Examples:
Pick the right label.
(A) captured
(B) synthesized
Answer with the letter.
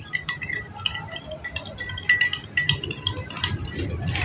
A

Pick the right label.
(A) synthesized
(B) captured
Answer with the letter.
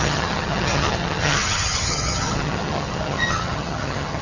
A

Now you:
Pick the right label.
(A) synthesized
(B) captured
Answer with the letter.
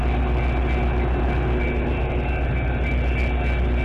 B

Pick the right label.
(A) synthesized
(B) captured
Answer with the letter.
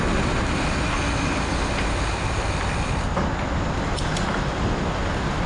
B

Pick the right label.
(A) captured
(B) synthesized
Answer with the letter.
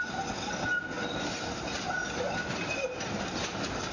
A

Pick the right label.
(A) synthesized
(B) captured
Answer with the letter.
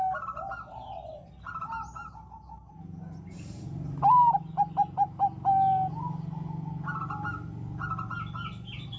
B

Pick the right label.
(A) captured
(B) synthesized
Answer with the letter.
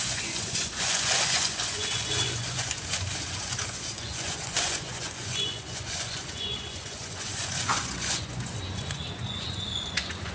B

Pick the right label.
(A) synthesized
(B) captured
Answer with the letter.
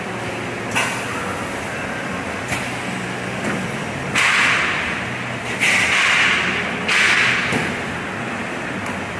B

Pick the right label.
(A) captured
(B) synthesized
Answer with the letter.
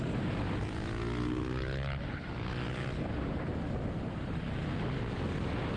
A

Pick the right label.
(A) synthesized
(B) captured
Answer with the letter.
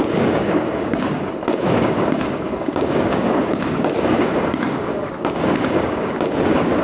A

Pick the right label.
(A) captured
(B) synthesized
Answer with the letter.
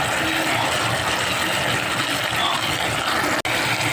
A